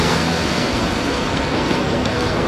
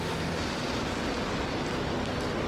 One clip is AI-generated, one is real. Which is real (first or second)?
second